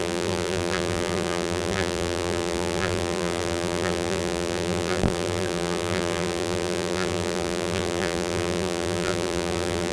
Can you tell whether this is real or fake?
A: fake